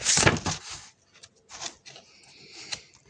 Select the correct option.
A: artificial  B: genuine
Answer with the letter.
B